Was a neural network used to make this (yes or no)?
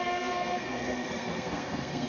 yes